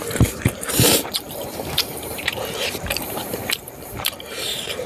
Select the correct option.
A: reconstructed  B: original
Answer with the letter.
A